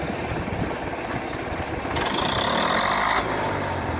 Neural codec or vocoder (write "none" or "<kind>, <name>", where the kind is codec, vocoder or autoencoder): none